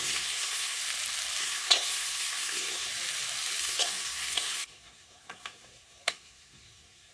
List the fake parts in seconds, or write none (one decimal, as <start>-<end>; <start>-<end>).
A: 0.0-0.8; 1.4-2.9; 3.6-7.1